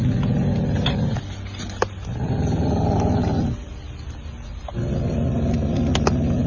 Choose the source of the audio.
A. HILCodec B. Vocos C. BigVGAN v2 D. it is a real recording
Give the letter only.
D